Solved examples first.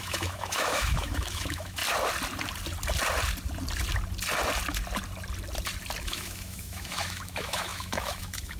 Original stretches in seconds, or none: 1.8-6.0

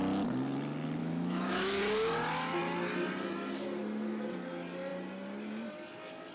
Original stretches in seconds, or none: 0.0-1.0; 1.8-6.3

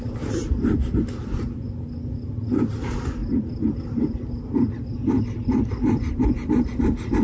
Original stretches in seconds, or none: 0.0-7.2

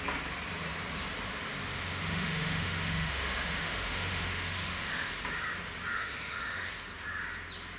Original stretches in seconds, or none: 0.0-1.7; 5.1-5.9; 6.7-7.8

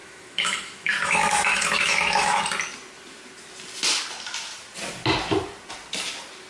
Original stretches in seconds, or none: 2.4-6.5

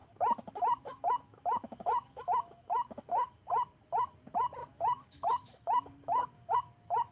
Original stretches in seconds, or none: 3.4-4.6; 6.5-7.1

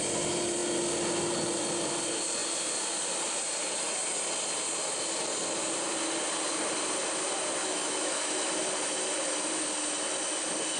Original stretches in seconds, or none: 0.0-7.6; 8.5-10.8